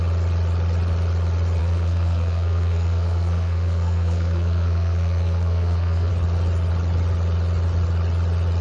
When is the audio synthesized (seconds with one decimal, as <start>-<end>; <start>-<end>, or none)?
1.6-6.1